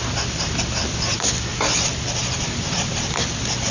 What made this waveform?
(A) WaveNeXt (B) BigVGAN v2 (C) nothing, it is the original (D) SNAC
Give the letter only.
C